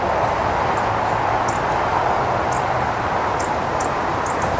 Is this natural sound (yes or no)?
yes